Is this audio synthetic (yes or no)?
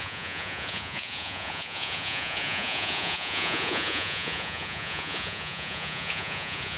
yes